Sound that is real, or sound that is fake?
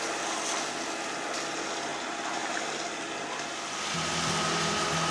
real